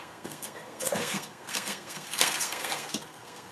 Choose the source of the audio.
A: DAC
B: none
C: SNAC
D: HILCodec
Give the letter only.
C